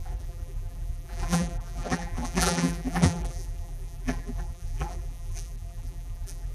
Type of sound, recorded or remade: remade